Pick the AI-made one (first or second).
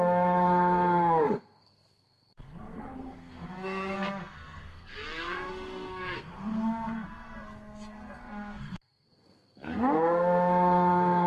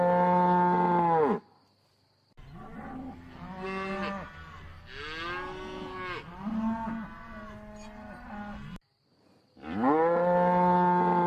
first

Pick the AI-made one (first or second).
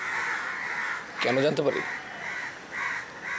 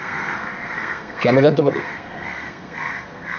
second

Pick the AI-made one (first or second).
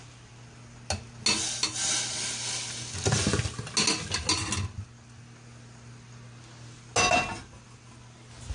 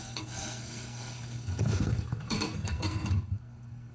second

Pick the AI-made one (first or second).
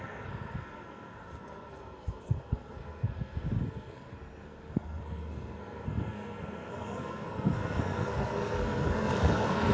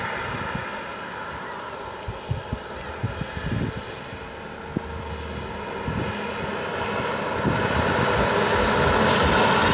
first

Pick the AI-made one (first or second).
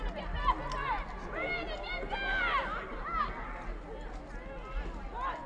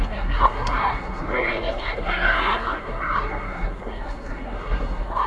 second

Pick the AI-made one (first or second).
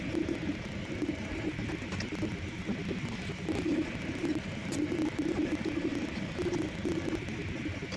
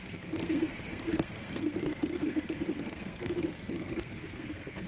second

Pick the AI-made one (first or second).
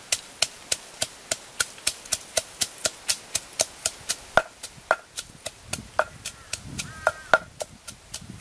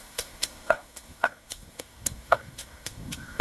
second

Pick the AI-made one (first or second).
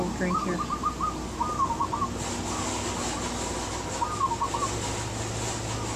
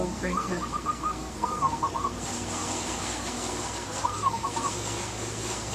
second